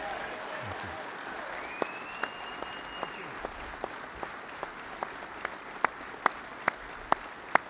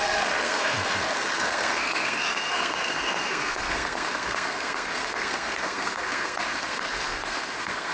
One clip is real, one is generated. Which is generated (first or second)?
second